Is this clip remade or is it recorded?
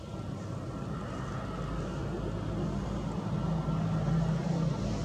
recorded